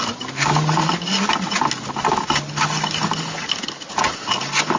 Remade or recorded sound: recorded